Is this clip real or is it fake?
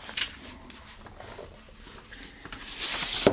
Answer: real